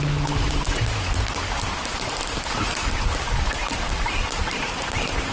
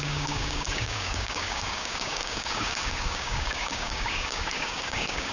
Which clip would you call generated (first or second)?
second